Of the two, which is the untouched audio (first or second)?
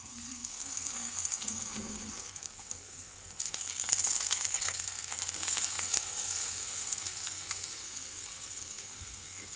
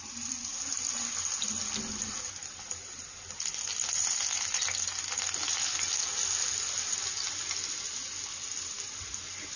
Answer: second